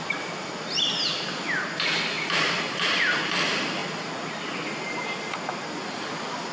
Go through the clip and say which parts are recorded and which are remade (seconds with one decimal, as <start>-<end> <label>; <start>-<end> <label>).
0.0-6.5 recorded